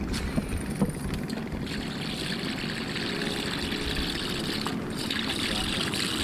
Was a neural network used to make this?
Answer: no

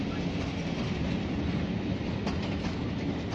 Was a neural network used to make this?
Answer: no